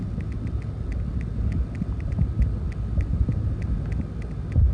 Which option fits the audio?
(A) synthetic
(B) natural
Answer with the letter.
B